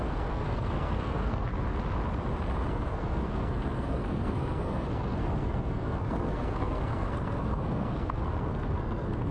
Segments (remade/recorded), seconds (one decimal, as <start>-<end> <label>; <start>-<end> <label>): 0.0-1.5 remade; 1.5-2.7 recorded; 2.7-9.3 remade